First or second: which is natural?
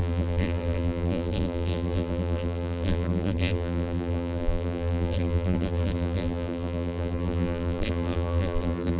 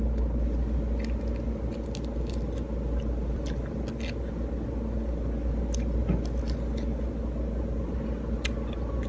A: second